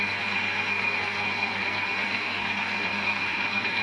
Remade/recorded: remade